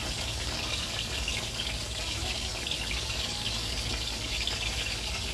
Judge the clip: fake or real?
fake